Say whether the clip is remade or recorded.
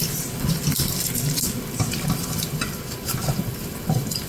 remade